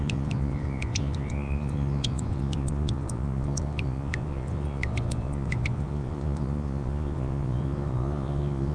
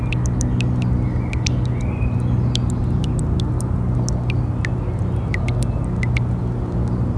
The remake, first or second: first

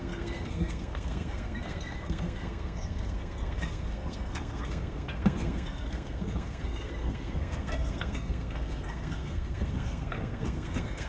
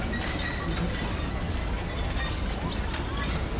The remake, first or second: first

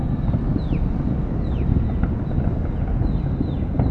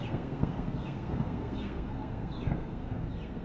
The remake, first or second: second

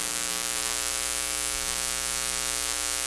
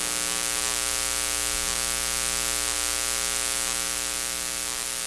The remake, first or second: first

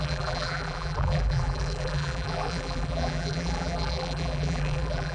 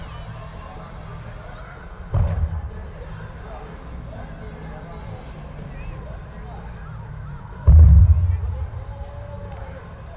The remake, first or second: first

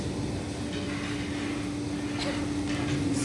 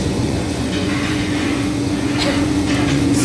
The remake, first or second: second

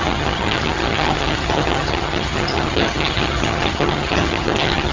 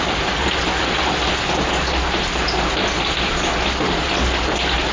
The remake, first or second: first